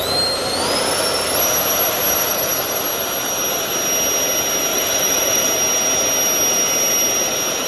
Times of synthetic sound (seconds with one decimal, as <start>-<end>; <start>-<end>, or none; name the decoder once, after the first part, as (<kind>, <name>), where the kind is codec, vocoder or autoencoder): 4.7-5.5 (vocoder, BigVGAN v2)

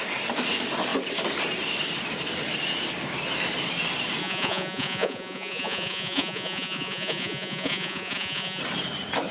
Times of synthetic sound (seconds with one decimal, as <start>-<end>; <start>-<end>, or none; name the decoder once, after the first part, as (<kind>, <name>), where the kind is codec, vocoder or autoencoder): 4.2-8.6 (vocoder, Vocos)

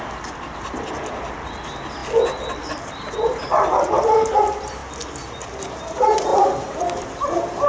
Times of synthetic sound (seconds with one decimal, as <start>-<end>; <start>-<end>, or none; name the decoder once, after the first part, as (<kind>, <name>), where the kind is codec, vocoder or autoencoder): 6.3-7.7 (vocoder, BigVGAN v2)

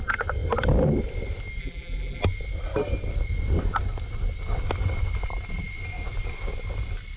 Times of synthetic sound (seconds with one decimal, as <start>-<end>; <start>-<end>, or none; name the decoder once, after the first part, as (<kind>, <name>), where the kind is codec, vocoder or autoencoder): 1.6-2.2 (vocoder, BigVGAN v2)

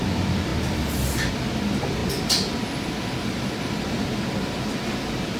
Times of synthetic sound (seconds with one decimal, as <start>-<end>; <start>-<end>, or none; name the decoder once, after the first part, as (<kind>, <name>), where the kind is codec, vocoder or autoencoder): none

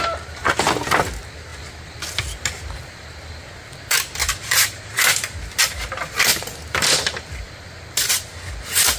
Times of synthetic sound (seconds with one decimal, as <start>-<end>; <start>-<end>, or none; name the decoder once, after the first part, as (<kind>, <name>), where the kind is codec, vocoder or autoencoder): 4.2-5.0 (vocoder, BigVGAN v2)

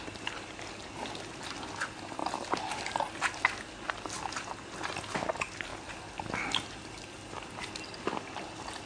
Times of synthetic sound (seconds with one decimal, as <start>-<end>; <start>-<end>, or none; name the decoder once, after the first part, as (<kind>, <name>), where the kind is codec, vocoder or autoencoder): none

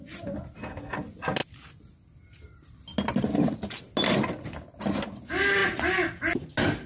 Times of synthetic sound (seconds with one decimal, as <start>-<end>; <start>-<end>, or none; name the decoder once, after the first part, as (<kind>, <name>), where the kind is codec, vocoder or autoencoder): none